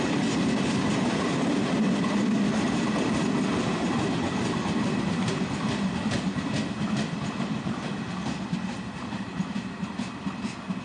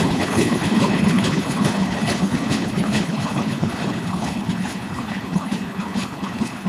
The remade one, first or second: second